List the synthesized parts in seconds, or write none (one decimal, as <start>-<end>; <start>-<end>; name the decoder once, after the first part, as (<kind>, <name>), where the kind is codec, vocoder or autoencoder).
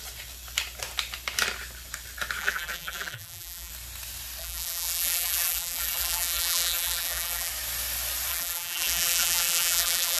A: 2.4-3.7 (vocoder, BigVGAN v2); 4.4-7.5; 8.3-10.2